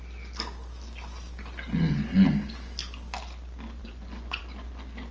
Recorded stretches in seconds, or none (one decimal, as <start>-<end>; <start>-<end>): 0.0-3.8; 4.4-5.1